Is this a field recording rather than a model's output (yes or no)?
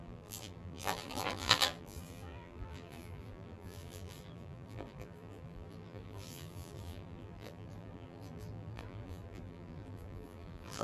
no